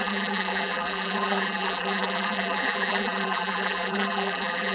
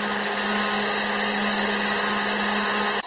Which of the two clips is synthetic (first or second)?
first